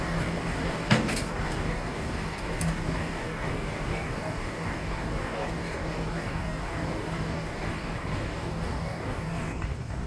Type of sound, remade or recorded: remade